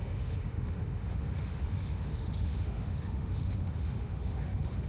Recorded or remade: remade